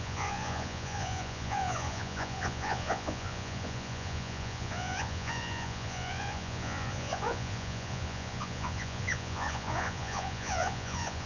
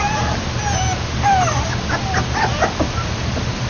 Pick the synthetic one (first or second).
first